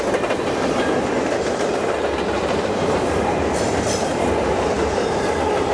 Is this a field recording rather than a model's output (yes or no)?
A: no